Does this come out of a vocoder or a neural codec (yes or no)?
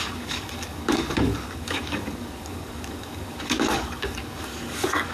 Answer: yes